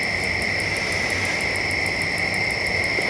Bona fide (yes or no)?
yes